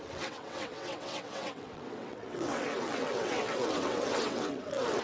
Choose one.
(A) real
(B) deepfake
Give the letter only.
B